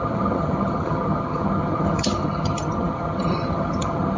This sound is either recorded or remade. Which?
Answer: remade